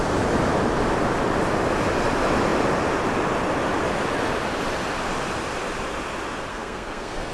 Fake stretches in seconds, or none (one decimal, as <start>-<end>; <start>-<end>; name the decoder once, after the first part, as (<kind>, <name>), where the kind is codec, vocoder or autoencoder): 6.5-7.3 (codec, SNAC)